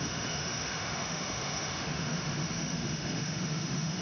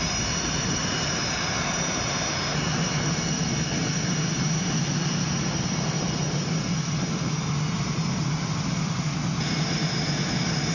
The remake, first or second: first